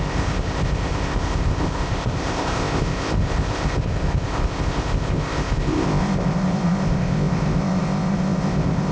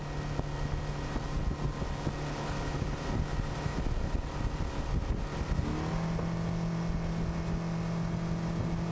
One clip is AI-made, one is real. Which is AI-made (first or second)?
first